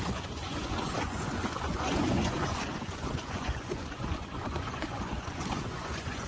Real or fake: fake